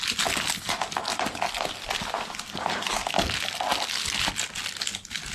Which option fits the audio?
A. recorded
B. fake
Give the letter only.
A